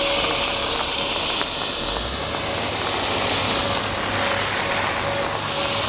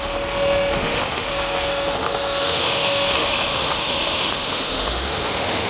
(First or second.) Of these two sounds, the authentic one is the first